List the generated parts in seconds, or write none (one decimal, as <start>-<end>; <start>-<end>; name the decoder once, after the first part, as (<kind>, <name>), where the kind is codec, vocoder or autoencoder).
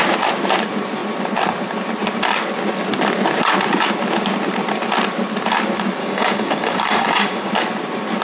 6.0-7.5 (codec, DAC)